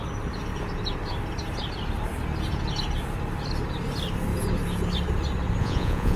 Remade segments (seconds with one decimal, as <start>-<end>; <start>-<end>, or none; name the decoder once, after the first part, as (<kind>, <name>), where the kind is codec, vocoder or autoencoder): 5.6-6.2 (vocoder, Vocos)